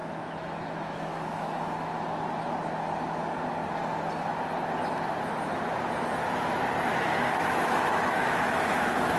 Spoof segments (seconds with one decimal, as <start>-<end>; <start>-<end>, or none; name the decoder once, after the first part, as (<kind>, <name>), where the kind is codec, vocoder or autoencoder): 0.0-2.2 (autoencoder, DAC-VAE); 6.9-9.2